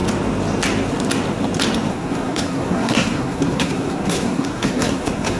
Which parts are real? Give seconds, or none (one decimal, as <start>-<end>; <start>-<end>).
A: 0.0-1.9